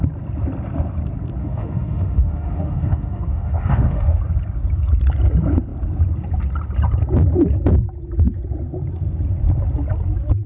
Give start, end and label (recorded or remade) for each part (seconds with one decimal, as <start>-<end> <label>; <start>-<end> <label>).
0.0-1.4 recorded; 1.4-4.2 remade; 4.2-10.5 recorded